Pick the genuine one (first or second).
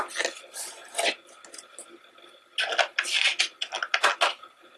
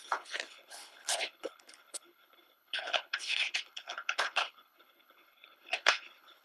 first